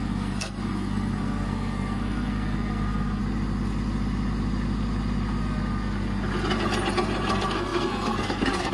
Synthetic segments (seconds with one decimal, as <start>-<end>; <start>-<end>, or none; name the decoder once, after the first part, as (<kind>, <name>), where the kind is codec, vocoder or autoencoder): 0.0-3.2 (codec, SNAC); 7.3-8.7